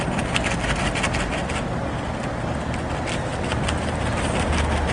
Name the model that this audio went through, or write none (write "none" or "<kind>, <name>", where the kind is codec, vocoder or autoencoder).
none